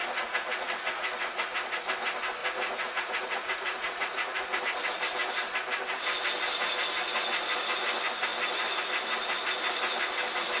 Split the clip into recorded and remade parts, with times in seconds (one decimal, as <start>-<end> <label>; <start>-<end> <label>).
0.0-1.8 remade; 1.8-2.4 recorded; 2.4-4.6 remade; 4.6-10.6 recorded